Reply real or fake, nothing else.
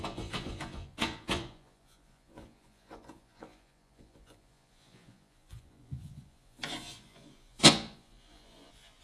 fake